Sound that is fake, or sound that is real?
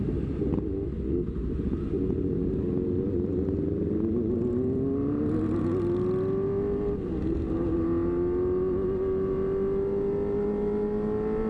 real